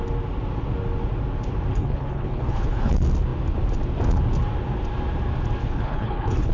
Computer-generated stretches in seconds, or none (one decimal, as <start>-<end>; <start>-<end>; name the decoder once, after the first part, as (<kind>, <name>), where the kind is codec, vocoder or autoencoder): 1.7-2.9 (codec, HILCodec); 5.6-6.5

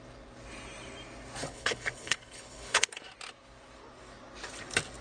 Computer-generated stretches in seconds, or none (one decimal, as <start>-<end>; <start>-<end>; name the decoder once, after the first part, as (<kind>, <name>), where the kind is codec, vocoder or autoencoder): 1.4-3.0 (codec, HILCodec)

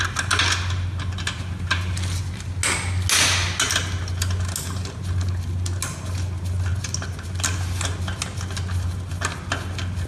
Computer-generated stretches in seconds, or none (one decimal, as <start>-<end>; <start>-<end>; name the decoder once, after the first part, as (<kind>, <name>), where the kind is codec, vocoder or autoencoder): none

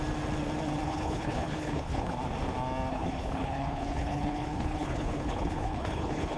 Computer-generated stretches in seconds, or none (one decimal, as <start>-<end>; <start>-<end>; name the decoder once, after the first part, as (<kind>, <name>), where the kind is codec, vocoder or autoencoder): 0.9-2.1 (codec, HILCodec); 2.9-6.4

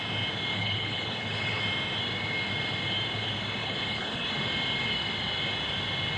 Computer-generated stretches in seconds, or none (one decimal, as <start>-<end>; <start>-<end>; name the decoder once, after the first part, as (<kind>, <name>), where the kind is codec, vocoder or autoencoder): 0.5-1.6 (codec, HILCodec); 3.6-4.3